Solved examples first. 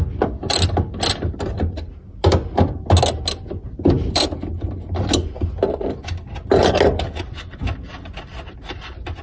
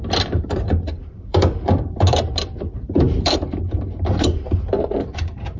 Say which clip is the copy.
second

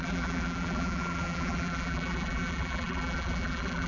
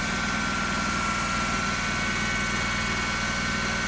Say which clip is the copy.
first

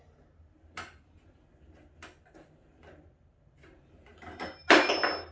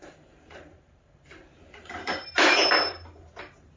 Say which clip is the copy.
second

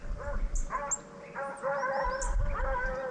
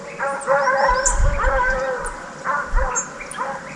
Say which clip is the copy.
second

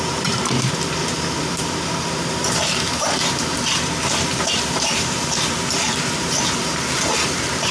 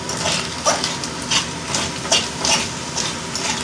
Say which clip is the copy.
first